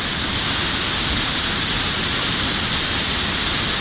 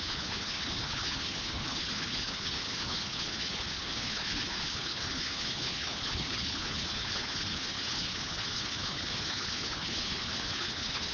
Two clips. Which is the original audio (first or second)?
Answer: first